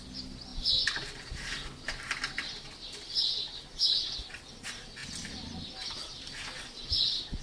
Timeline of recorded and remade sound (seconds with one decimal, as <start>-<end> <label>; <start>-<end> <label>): 0.0-7.4 recorded